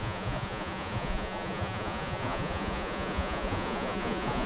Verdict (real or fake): fake